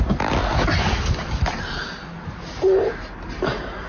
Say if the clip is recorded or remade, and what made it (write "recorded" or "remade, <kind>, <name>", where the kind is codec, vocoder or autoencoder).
recorded